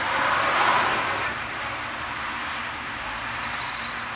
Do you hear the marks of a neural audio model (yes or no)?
no